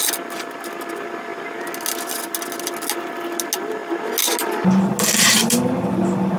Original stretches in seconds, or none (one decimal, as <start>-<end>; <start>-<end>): 0.0-6.4